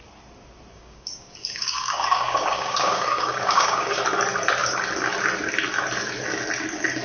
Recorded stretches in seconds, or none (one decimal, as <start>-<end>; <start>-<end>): 0.0-0.7; 4.0-7.0